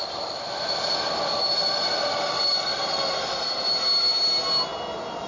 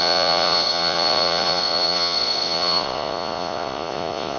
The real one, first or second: first